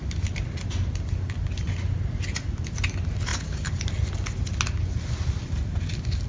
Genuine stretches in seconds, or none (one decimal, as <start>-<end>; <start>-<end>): 0.0-6.3